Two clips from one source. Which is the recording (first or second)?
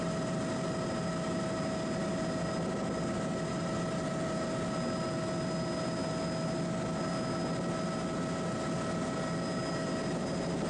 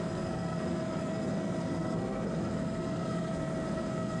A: first